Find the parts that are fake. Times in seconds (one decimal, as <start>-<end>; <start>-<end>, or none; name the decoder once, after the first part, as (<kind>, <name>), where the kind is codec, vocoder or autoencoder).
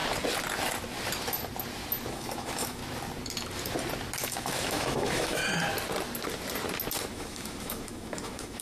2.1-2.8 (autoencoder, DAC-VAE); 4.2-5.4; 7.1-8.6